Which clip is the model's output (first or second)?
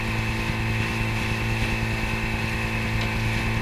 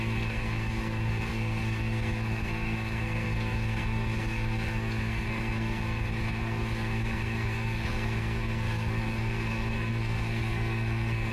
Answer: second